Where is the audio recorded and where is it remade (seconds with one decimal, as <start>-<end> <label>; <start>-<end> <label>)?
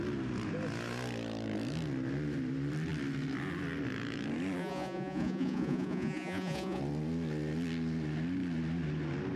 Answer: 0.0-4.6 recorded; 4.6-6.8 remade; 6.8-9.4 recorded